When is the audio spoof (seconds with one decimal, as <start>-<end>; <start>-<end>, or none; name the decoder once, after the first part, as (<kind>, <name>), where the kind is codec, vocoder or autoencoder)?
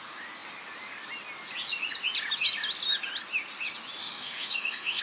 4.0-5.0 (autoencoder, DAC-VAE)